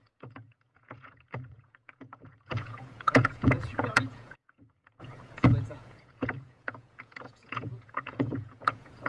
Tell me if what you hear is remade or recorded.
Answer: remade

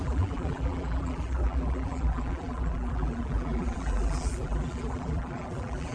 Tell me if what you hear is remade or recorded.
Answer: remade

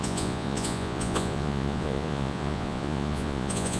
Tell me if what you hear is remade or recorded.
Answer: remade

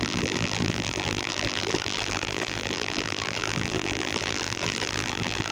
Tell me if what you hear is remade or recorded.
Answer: remade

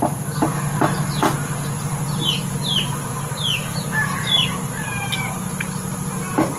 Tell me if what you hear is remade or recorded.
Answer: recorded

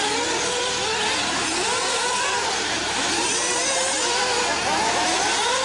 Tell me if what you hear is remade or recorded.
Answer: recorded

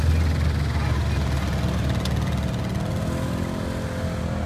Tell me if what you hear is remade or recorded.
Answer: recorded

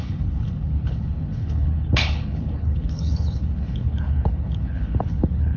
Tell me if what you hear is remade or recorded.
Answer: remade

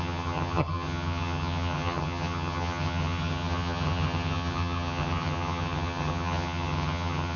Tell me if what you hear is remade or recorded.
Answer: remade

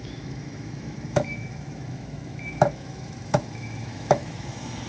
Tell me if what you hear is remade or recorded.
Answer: remade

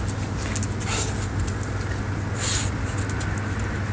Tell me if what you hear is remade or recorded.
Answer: recorded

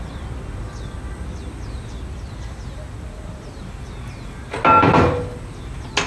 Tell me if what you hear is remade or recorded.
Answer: recorded